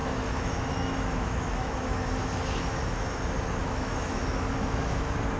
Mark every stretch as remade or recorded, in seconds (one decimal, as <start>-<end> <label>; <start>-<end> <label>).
0.0-3.2 remade; 3.2-3.6 recorded; 3.6-5.4 remade